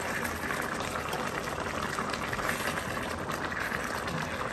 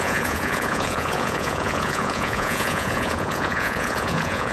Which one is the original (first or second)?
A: first